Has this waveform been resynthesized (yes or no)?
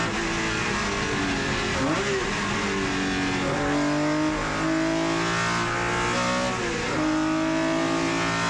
no